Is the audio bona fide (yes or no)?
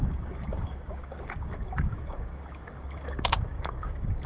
no